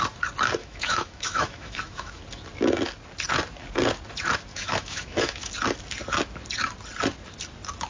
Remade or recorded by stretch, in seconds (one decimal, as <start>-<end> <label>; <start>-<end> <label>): 0.0-0.6 recorded; 0.6-2.2 remade; 2.2-4.5 recorded; 4.5-5.5 remade; 5.5-7.9 recorded